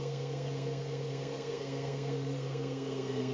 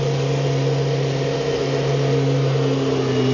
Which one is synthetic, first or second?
first